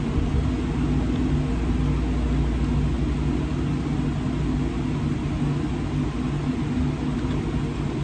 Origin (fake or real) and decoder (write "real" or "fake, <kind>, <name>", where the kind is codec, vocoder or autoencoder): real